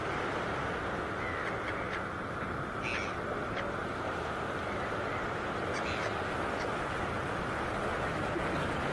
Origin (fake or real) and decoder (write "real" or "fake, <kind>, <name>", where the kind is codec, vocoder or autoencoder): real